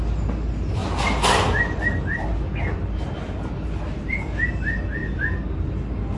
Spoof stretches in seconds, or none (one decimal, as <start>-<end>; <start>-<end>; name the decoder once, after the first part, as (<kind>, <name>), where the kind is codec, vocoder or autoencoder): none